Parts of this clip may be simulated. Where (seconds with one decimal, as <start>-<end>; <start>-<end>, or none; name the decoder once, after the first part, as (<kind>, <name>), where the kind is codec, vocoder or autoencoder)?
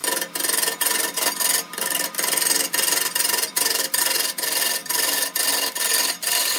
4.8-5.4 (vocoder, BigVGAN v2)